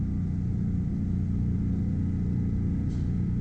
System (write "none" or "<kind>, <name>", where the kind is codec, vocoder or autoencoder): none